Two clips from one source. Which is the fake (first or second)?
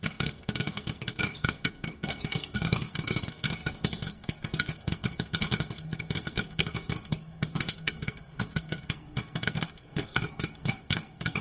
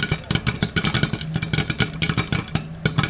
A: first